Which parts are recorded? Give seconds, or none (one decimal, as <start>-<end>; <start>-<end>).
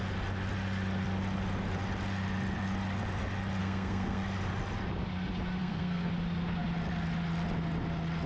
0.0-3.6; 4.3-5.6; 6.1-8.3